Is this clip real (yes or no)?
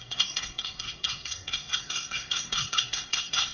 no